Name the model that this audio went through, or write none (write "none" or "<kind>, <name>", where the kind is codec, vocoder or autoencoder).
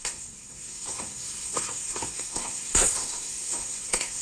codec, SNAC